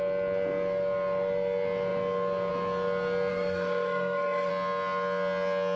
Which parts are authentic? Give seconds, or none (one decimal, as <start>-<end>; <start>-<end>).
0.0-3.3; 4.5-5.8

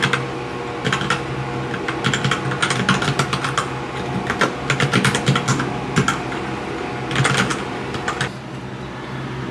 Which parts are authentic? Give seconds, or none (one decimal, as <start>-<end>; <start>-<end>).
0.0-9.5

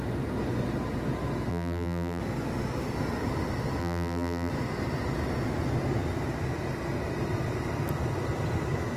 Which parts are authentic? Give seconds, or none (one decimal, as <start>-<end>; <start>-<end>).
0.0-1.5; 2.2-3.8; 4.5-9.0

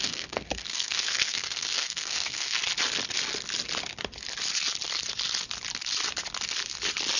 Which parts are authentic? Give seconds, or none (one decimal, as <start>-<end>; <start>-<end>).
2.6-7.2